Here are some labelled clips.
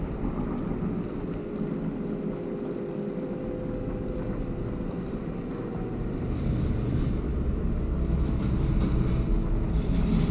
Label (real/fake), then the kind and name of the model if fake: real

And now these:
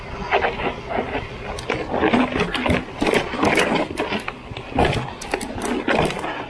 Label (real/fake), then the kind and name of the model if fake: real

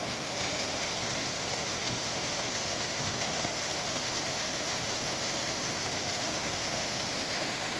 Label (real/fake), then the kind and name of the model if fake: fake, autoencoder, DAC-VAE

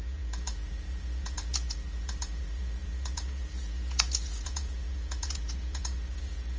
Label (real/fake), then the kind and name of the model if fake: fake, vocoder, Vocos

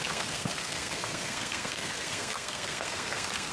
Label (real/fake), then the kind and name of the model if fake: fake, codec, SNAC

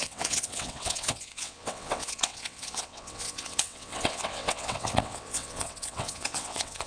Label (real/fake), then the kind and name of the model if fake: fake, vocoder, WaveNeXt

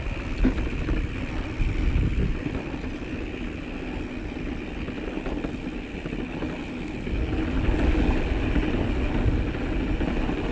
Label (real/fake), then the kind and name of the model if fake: real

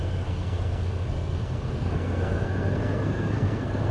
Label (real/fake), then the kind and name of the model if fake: fake, codec, SNAC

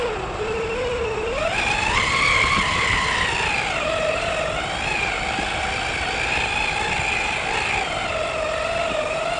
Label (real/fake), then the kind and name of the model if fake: real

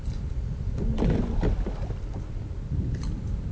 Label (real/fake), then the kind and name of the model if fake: real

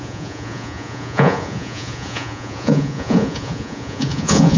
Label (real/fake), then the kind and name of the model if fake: fake, vocoder, Vocos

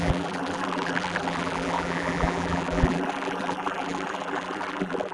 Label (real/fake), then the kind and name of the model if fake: fake, vocoder, BigVGAN v2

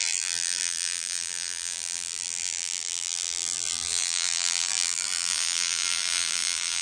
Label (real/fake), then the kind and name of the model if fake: fake, vocoder, BigVGAN v2